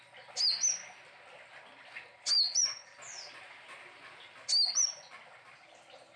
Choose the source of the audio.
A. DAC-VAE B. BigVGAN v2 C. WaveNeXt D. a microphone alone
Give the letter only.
D